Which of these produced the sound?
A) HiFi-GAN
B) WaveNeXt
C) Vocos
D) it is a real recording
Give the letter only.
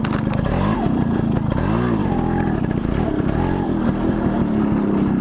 D